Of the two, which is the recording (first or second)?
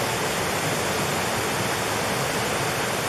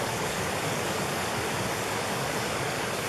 first